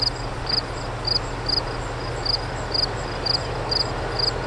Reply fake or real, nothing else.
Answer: real